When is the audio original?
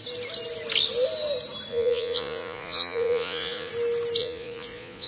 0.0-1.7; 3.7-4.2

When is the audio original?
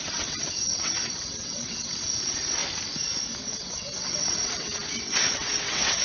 2.6-3.4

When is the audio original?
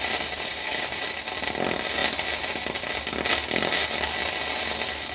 0.0-0.5; 1.0-5.1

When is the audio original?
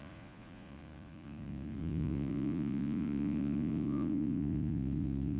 none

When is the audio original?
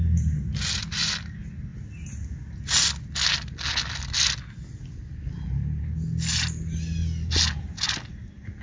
0.0-8.6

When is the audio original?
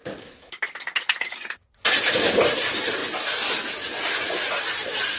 0.0-5.2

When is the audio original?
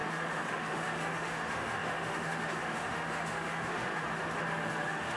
none